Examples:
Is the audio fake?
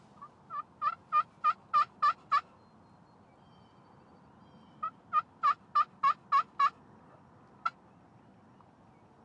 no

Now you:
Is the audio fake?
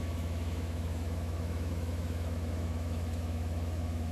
yes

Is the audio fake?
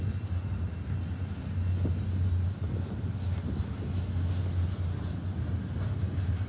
no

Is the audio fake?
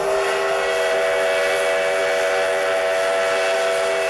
no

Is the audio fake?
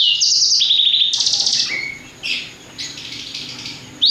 no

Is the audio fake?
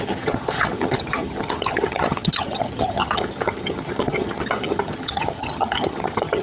yes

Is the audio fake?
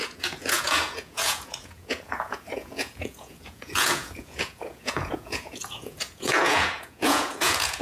yes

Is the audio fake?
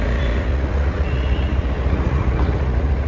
yes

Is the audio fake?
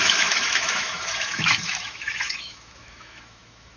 yes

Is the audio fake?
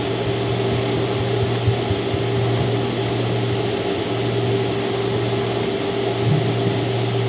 no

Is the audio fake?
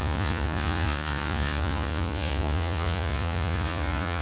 yes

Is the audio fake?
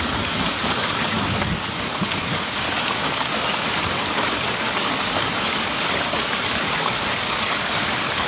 yes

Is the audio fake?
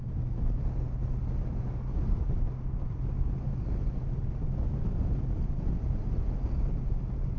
no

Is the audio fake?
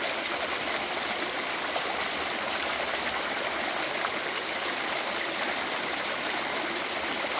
no